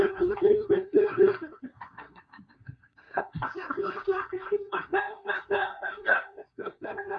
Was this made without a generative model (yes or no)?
no